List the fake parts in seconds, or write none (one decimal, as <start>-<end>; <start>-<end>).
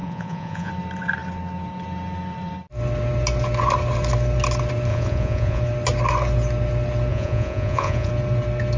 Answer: 0.0-0.7; 4.9-5.6; 7.1-8.1